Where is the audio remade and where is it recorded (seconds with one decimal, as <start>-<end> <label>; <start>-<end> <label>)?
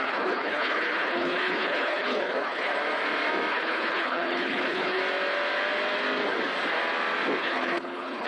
0.0-2.7 remade; 2.7-3.5 recorded; 3.5-5.0 remade; 5.0-7.4 recorded; 7.4-8.3 remade